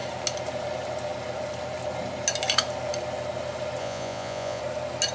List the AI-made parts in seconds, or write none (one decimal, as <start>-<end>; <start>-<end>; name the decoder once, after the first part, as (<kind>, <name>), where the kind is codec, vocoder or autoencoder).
3.8-4.6 (vocoder, Vocos)